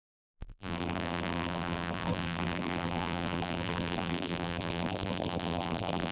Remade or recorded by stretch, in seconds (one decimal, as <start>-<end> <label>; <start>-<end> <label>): 0.0-6.1 remade